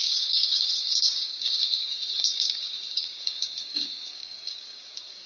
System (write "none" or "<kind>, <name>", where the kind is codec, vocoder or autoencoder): codec, DAC